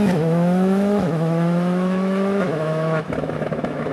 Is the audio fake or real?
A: fake